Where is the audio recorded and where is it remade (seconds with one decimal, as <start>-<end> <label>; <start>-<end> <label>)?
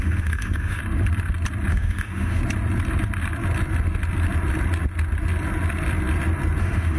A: 0.0-0.8 remade; 0.8-1.7 recorded; 1.7-2.4 remade; 2.4-6.6 recorded; 6.6-7.0 remade